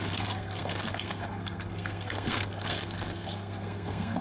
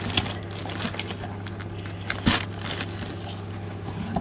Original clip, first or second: second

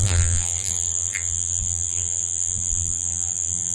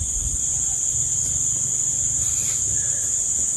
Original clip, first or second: second